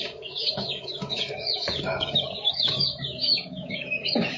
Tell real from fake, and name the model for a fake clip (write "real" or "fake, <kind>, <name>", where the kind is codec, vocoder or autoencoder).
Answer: fake, codec, DAC